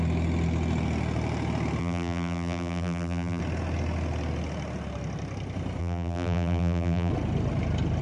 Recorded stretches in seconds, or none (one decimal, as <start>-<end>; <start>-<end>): 0.0-1.8; 3.4-5.8; 7.1-8.0